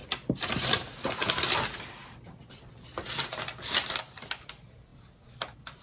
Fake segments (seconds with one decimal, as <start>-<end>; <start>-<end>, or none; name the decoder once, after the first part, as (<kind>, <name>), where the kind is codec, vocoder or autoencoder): 2.0-3.2 (vocoder, BigVGAN v2)